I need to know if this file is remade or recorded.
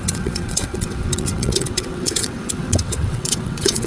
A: remade